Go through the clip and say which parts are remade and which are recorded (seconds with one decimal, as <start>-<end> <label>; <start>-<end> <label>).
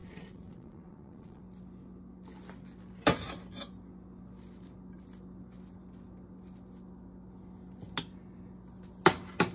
0.0-1.4 remade; 1.4-9.5 recorded